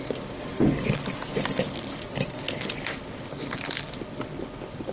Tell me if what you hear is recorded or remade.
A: recorded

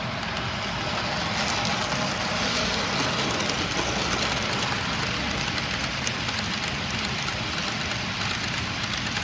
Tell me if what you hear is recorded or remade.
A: recorded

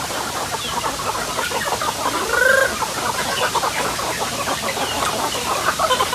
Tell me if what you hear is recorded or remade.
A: recorded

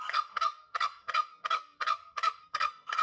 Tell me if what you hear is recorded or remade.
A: remade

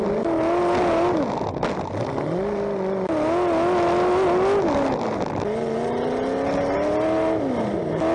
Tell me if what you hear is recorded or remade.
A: recorded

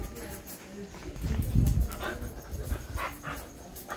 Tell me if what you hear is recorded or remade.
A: recorded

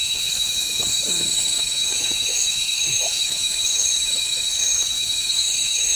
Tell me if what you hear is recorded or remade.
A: remade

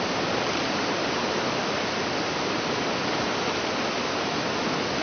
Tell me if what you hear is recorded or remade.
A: recorded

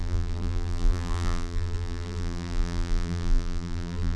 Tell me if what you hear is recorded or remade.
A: remade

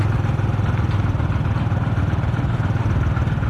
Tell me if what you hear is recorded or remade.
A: recorded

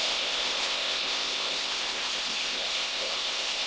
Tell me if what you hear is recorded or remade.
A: remade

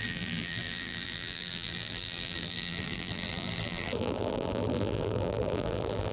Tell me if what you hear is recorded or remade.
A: remade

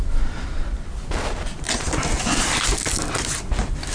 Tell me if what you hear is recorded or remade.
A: recorded